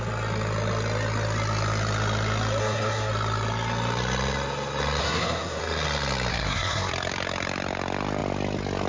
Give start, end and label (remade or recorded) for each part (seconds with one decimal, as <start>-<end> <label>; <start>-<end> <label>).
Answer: 0.0-2.6 recorded; 2.6-3.1 remade; 3.1-5.0 recorded; 5.0-5.6 remade; 5.6-6.3 recorded; 6.3-6.9 remade; 6.9-8.9 recorded